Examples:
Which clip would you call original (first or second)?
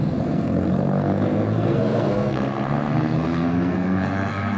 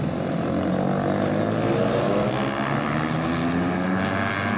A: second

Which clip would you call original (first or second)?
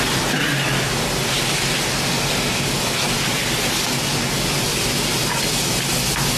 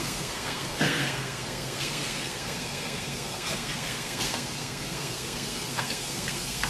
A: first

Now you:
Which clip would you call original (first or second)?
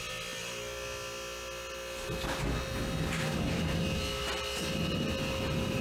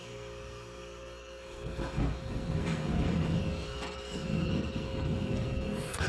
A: first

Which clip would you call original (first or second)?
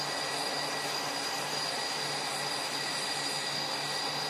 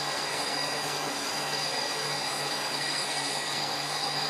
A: first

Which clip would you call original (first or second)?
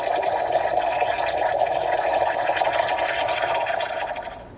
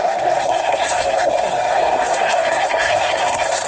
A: first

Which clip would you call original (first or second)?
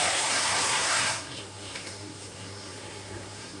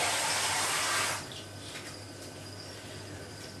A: second